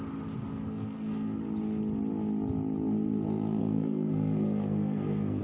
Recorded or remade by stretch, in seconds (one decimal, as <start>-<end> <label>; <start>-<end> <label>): 0.0-0.4 recorded; 0.4-1.4 remade; 1.4-3.6 recorded; 3.6-5.4 remade